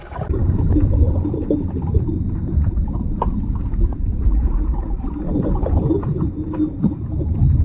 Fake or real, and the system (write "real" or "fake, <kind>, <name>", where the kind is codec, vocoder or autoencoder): fake, vocoder, BigVGAN v2